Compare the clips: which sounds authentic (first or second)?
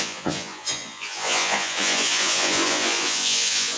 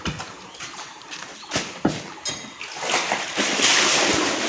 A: second